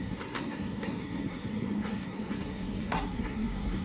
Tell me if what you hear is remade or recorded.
remade